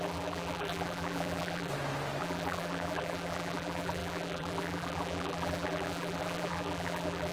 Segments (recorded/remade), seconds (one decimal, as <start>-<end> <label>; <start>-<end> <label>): 0.0-1.7 remade; 1.7-2.2 recorded; 2.2-7.3 remade